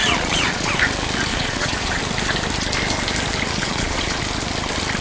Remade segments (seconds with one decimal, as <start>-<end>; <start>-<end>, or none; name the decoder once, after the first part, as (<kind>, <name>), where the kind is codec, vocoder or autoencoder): 0.0-0.7 (vocoder, Vocos); 1.3-2.0; 3.6-4.2